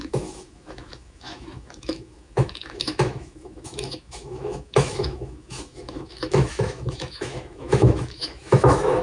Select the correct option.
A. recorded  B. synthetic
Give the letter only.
B